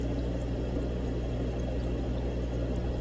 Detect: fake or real real